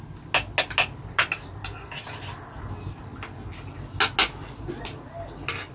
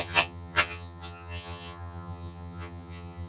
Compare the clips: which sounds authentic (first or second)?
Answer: first